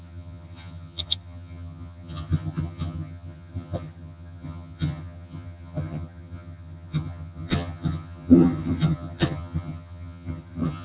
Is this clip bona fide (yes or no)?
no